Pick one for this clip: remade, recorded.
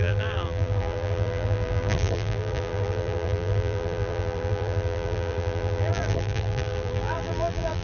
remade